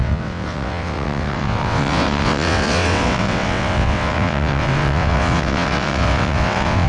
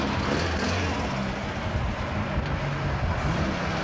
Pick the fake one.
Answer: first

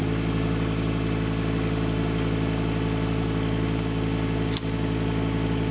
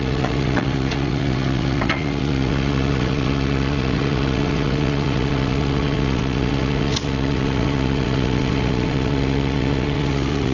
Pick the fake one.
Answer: second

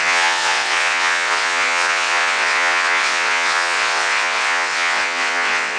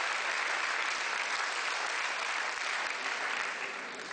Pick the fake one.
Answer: first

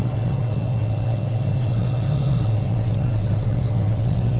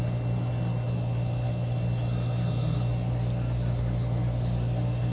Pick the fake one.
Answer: first